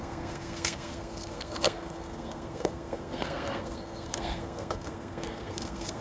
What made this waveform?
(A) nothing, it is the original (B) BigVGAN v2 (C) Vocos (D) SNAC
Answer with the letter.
D